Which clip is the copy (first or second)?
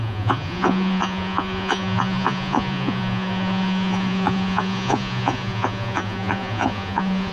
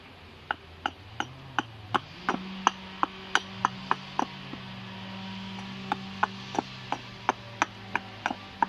first